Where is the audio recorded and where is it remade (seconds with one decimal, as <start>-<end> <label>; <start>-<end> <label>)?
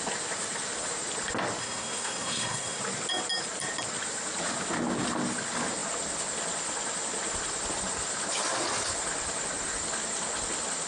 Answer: 0.0-1.6 recorded; 1.6-2.8 remade; 2.8-10.9 recorded